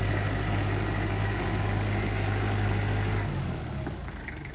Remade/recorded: remade